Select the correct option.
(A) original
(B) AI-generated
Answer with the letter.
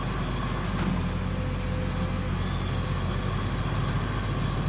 A